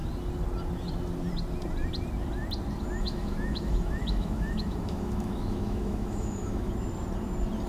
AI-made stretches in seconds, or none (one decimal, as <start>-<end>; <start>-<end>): 3.0-6.7